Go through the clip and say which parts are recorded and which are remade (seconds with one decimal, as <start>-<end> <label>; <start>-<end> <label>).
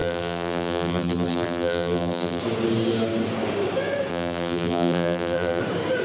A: 0.0-2.4 remade; 2.4-4.1 recorded; 4.1-5.6 remade; 5.6-6.0 recorded